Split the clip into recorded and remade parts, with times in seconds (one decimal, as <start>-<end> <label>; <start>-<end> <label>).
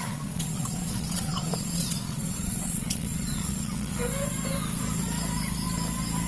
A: 0.0-4.0 remade; 4.0-6.3 recorded